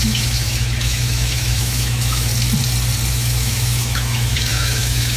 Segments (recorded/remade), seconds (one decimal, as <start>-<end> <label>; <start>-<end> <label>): 0.0-2.3 remade; 2.3-3.1 recorded; 3.1-5.2 remade